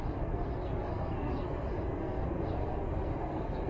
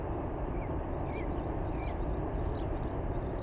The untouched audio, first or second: second